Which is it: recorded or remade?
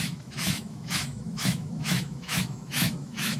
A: remade